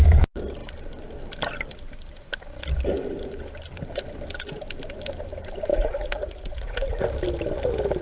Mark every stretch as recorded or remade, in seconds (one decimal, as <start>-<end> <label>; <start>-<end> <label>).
0.0-5.7 recorded; 5.7-7.0 remade; 7.0-8.0 recorded